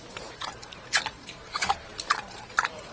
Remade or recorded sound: remade